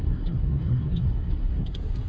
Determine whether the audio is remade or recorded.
remade